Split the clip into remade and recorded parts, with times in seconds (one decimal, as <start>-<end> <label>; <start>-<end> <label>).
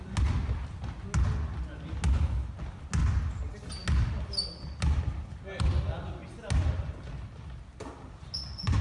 0.0-8.8 recorded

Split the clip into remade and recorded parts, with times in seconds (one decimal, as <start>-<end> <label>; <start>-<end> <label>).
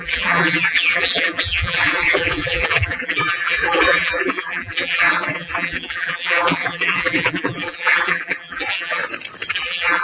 0.0-9.0 remade; 9.0-9.5 recorded; 9.5-10.0 remade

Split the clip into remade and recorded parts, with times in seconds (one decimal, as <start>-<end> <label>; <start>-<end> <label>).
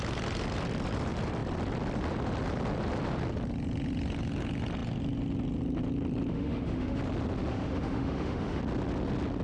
0.0-6.3 recorded; 6.3-7.0 remade; 7.0-7.5 recorded; 7.5-8.6 remade; 8.6-9.4 recorded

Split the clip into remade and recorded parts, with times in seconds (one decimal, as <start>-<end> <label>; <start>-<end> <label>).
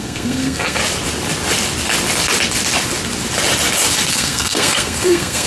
0.0-0.8 remade; 0.8-4.1 recorded; 4.1-5.5 remade